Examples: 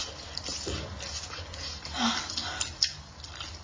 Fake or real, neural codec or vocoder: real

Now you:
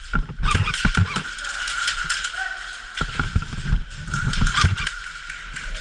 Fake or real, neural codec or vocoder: real